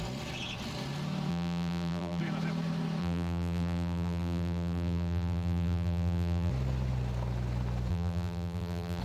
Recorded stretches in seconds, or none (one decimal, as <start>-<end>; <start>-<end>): 0.0-1.3; 2.2-3.0; 6.5-7.9